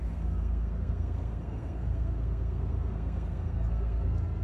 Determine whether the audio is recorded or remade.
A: remade